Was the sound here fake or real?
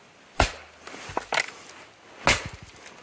real